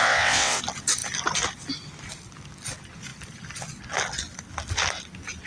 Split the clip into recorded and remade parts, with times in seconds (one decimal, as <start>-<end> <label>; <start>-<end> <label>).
0.0-0.6 remade; 0.6-5.5 recorded

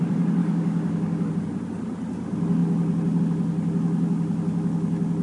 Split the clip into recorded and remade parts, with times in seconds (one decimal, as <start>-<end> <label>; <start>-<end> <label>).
0.0-0.4 recorded; 0.4-1.3 remade; 1.3-5.2 recorded

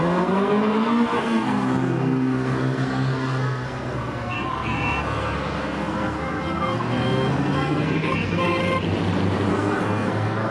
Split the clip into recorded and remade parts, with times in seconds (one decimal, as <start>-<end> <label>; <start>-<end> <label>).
0.0-8.6 remade; 8.6-9.5 recorded; 9.5-10.5 remade

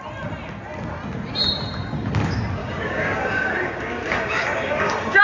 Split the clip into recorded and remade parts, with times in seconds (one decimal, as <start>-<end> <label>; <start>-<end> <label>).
0.0-2.6 recorded; 2.6-5.2 remade